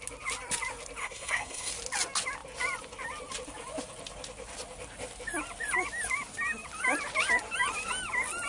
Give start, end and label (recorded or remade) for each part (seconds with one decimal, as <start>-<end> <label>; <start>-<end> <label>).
0.0-1.0 recorded; 1.0-1.7 remade; 1.7-8.5 recorded